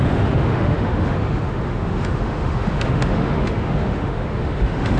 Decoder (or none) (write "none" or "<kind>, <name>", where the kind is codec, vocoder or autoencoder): autoencoder, DAC-VAE